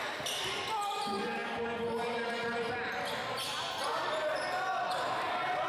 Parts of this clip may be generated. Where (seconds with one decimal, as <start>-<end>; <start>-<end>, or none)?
none